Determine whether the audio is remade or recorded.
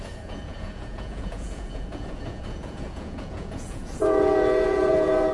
remade